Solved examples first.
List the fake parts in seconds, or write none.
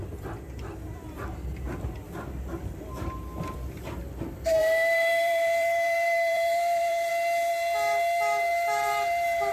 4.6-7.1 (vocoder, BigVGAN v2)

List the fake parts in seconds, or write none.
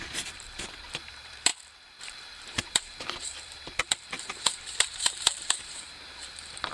0.0-1.5 (vocoder, BigVGAN v2); 2.0-6.7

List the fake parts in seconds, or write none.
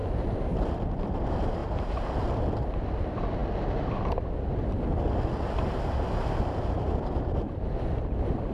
0.0-1.6 (vocoder, BigVGAN v2); 2.7-3.4; 7.5-8.5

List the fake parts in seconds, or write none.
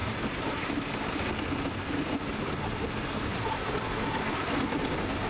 0.0-1.1 (vocoder, BigVGAN v2)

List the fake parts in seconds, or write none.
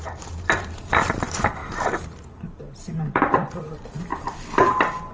0.0-4.1 (vocoder, BigVGAN v2)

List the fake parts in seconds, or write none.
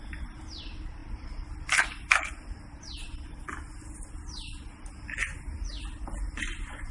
none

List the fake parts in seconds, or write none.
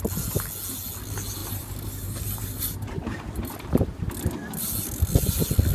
1.4-4.1 (vocoder, BigVGAN v2)